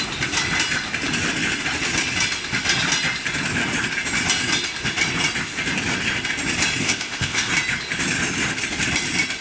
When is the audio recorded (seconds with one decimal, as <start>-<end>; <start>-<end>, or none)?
0.0-6.8; 7.5-9.4